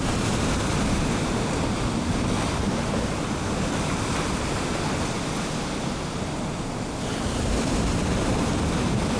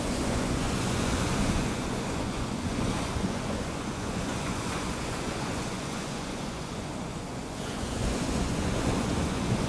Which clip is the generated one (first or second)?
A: second